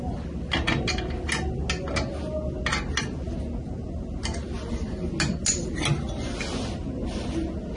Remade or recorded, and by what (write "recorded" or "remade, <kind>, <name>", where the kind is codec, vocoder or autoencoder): recorded